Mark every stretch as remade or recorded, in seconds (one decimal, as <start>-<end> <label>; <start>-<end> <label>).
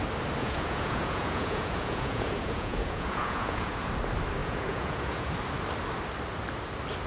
0.0-0.4 recorded; 0.4-3.9 remade; 3.9-4.4 recorded; 4.4-5.3 remade; 5.3-7.1 recorded